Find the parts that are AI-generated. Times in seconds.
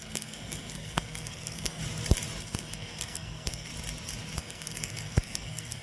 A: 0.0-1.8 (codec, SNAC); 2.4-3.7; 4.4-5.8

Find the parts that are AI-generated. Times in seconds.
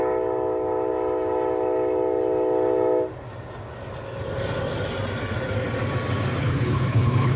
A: 6.4-7.4 (codec, HILCodec)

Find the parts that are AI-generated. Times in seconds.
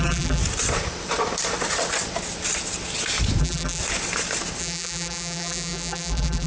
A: 0.0-0.4 (vocoder, BigVGAN v2); 3.4-3.8; 4.6-6.5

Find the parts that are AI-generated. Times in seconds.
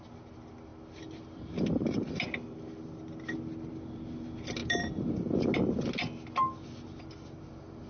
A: none